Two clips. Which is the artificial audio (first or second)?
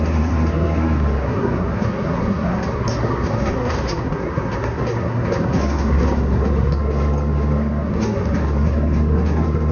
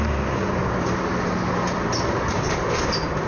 first